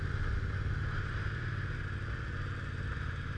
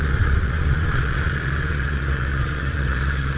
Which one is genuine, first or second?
first